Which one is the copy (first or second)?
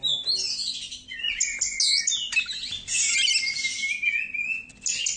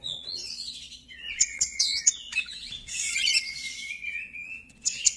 second